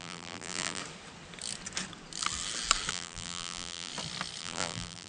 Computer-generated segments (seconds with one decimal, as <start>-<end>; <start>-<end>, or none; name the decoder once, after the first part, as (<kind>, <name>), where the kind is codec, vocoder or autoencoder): 0.0-0.8 (vocoder, BigVGAN v2); 2.9-3.9; 4.4-5.1